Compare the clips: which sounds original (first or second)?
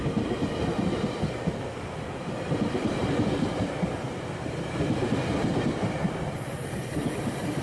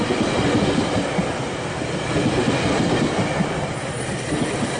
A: second